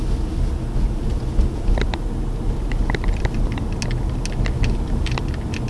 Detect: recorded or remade recorded